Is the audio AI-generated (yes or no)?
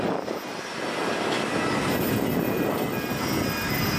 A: no